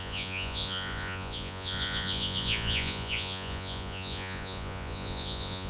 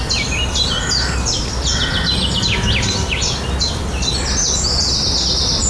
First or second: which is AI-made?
first